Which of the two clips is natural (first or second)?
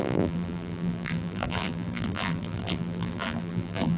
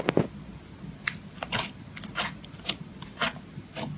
second